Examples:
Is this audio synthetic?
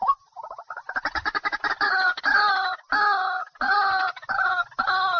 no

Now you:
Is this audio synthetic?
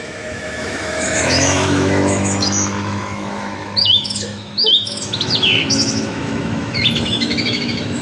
yes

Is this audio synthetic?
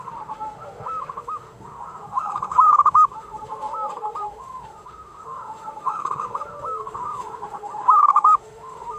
yes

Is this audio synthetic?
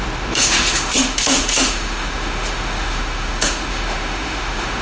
yes